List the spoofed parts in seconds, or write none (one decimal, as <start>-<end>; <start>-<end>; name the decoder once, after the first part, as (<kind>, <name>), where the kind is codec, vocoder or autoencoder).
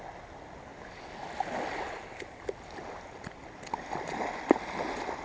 none